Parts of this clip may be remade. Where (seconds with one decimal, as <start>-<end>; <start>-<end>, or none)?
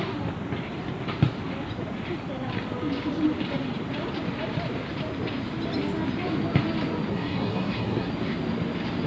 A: 7.1-8.1